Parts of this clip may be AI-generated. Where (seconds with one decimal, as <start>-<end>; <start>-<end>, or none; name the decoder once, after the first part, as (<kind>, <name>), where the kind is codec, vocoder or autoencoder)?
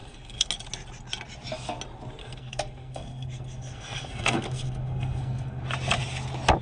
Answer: 0.0-0.5 (codec, SNAC); 2.2-5.6